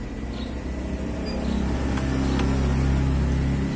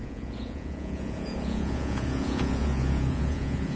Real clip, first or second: first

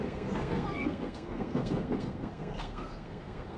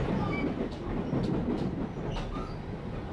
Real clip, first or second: second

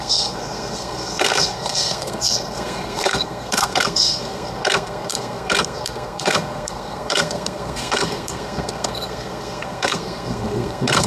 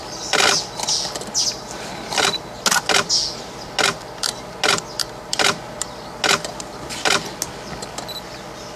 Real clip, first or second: second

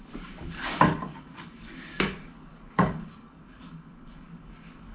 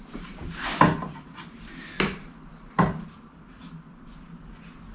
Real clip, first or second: second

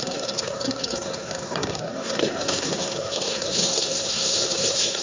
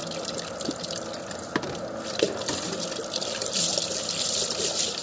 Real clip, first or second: second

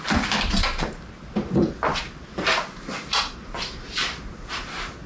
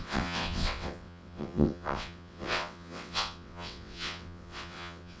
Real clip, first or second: first